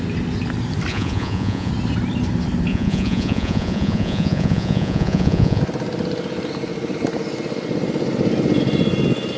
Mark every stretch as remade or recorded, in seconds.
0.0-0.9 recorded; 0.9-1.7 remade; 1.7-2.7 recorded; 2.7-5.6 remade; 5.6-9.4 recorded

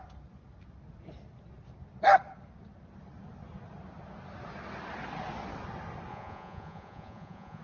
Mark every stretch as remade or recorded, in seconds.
0.0-6.1 recorded; 6.1-7.6 remade

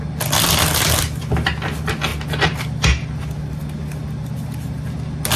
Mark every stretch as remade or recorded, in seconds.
0.0-5.4 recorded